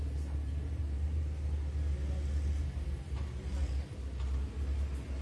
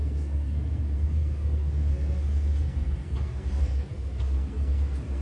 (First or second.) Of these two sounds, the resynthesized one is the second